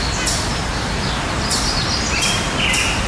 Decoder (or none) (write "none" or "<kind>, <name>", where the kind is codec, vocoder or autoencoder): none